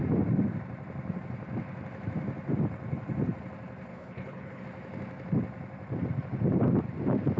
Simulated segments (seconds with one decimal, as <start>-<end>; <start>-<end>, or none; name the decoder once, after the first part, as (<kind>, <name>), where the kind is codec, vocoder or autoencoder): 3.9-4.6 (codec, HILCodec)